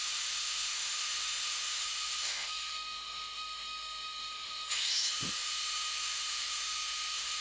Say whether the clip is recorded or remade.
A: remade